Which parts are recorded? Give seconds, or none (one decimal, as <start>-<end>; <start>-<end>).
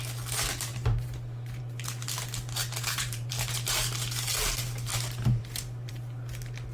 0.0-0.7; 1.6-2.6; 3.3-4.9; 5.9-6.7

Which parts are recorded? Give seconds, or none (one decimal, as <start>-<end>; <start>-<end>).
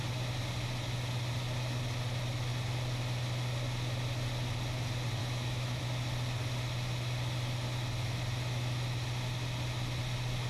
0.0-5.2; 5.8-10.5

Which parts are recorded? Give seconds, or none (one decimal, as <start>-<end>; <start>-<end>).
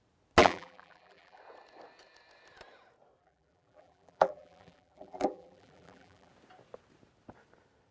0.0-0.4; 1.4-3.2; 6.3-7.9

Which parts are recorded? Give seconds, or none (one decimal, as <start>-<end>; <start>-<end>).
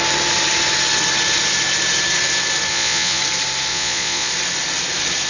0.0-2.7; 3.2-3.7; 4.3-5.3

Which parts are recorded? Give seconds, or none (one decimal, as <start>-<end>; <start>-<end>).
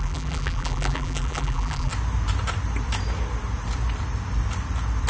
1.9-5.1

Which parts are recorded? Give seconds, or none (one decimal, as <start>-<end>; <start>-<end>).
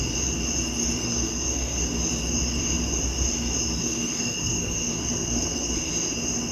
0.0-1.0; 1.8-3.8; 5.9-6.5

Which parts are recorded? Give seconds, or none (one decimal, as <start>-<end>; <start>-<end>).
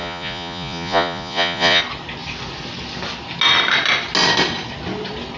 1.8-5.4